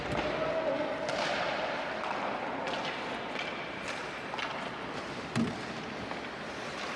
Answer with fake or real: real